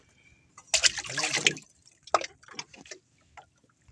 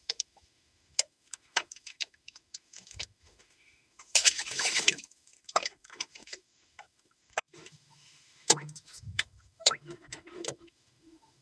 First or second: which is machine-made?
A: second